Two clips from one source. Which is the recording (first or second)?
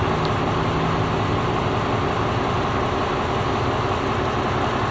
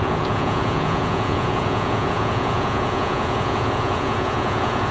first